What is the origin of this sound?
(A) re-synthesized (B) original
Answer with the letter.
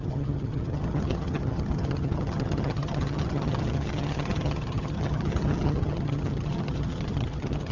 A